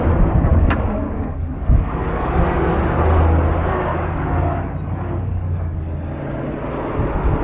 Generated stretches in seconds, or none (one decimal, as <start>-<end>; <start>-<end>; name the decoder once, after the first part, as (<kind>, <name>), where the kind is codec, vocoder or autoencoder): 0.5-2.7 (codec, DAC); 3.9-5.9